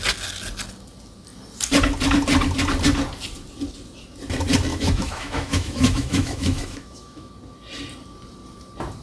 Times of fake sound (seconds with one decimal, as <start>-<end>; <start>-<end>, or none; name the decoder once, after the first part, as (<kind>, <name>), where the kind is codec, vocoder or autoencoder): 4.7-7.3 (autoencoder, DAC-VAE)